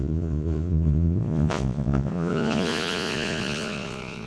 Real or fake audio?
fake